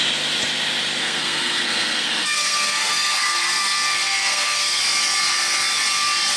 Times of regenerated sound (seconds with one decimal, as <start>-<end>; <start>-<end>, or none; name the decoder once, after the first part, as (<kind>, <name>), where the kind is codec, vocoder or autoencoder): 1.0-4.8 (codec, SNAC)